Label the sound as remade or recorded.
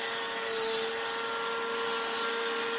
recorded